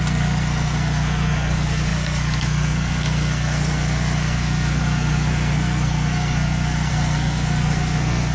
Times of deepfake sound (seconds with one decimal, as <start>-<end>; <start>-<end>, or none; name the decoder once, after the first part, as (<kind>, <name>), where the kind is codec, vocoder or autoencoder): 0.0-8.3 (codec, SNAC)